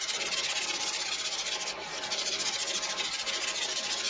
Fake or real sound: real